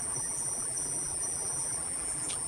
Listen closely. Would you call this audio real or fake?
fake